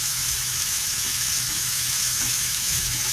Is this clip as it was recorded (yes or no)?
no